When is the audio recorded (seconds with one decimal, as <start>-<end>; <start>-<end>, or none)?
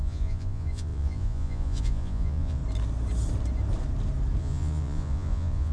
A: 2.6-4.4